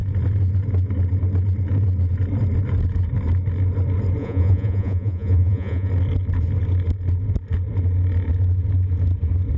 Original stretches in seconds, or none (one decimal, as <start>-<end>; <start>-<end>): 0.0-4.2; 5.9-9.6